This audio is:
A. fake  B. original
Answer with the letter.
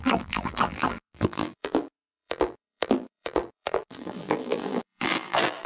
A